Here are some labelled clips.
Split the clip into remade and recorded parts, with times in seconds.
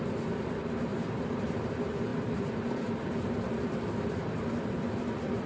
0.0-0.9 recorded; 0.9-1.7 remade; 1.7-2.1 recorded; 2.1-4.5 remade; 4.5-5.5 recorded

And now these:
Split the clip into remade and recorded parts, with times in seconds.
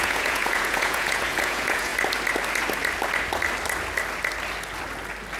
0.0-1.9 remade; 1.9-5.4 recorded